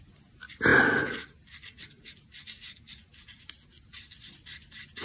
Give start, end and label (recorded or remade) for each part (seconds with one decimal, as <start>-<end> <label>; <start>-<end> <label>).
0.0-5.0 recorded

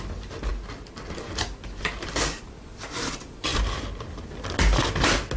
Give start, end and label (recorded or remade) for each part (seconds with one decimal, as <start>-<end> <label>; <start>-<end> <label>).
0.0-5.4 recorded

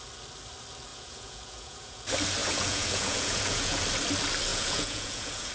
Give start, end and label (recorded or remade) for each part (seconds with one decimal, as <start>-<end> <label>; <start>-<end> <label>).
0.0-0.9 recorded; 0.9-2.0 remade; 2.0-2.4 recorded; 2.4-3.8 remade; 3.8-4.5 recorded; 4.5-5.5 remade

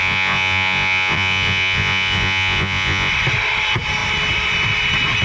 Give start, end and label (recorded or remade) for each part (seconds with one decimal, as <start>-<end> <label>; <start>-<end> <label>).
0.0-3.1 remade; 3.1-5.2 recorded